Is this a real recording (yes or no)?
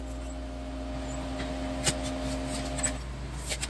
yes